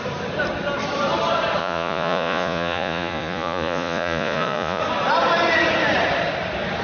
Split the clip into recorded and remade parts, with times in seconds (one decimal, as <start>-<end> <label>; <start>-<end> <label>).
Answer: 0.0-1.6 recorded; 1.6-4.8 remade; 4.8-6.8 recorded